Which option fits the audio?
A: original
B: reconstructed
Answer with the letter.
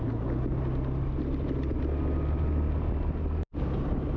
A